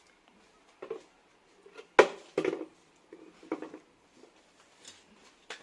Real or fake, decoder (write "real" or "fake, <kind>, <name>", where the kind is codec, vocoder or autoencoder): real